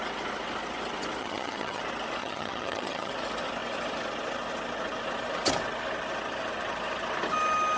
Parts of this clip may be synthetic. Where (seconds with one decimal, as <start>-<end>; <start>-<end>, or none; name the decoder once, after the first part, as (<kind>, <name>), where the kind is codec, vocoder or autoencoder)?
1.2-1.8 (vocoder, HiFi-GAN); 2.2-3.1